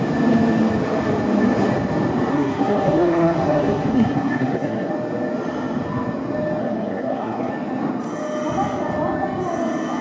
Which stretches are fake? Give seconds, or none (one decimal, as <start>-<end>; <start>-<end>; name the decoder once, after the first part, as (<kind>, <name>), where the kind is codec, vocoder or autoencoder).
2.3-4.9 (codec, SNAC); 6.6-7.5

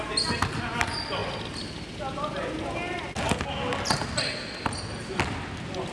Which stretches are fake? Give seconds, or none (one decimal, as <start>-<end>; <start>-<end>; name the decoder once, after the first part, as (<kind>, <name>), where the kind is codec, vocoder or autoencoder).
none

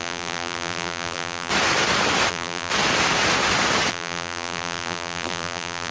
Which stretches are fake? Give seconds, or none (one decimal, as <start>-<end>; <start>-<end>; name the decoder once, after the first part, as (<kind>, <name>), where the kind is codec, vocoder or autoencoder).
0.0-1.5 (vocoder, BigVGAN v2); 2.3-2.7; 3.9-5.9

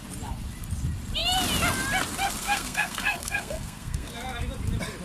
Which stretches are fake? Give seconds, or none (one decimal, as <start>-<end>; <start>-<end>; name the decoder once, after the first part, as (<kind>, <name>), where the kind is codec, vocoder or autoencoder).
2.4-4.1 (codec, SNAC)

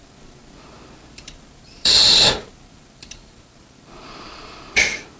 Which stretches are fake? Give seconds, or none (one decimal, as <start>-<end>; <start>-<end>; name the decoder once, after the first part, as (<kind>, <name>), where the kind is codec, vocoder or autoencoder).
0.0-5.2 (vocoder, BigVGAN v2)

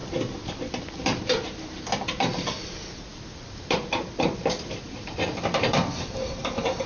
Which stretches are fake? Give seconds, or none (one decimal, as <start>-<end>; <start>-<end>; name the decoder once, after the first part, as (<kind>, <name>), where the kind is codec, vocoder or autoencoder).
0.7-6.9 (vocoder, BigVGAN v2)

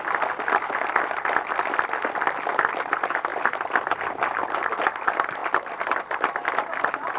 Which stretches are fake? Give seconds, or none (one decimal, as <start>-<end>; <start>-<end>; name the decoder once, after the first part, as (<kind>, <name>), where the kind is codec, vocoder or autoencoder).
5.4-6.0 (vocoder, BigVGAN v2)